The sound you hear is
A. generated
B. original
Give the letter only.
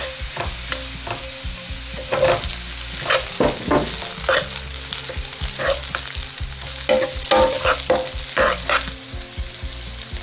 B